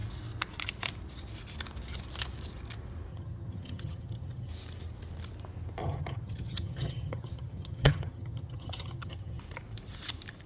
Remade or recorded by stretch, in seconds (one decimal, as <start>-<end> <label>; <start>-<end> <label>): 0.0-3.1 recorded; 3.1-4.5 remade; 4.5-5.8 recorded; 5.8-9.4 remade; 9.4-10.5 recorded